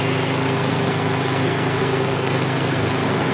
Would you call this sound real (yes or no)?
no